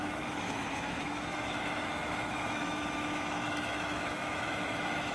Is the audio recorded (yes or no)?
no